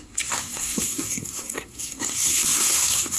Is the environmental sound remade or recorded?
remade